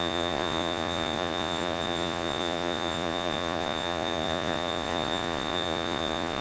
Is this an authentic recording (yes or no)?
no